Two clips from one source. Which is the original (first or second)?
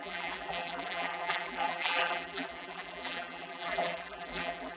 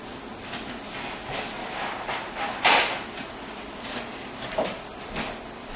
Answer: second